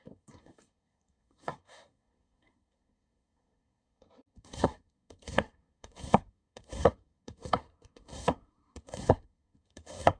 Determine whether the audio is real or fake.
fake